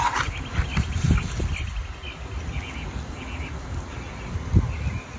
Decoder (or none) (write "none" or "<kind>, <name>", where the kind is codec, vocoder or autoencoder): none